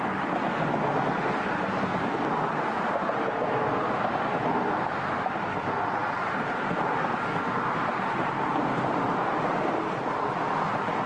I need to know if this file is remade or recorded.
recorded